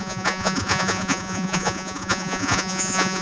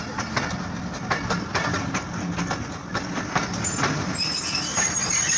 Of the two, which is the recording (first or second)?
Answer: second